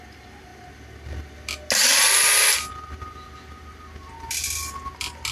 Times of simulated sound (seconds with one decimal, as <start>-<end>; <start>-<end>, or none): none